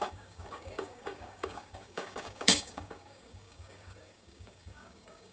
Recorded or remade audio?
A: remade